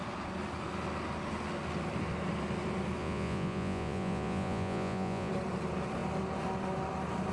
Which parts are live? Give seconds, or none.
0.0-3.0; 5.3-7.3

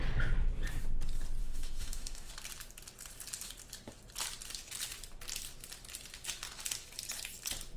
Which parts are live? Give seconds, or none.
0.0-1.4; 2.3-7.8

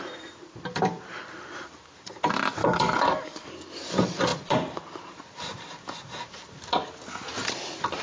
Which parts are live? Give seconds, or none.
0.0-2.6; 3.5-8.0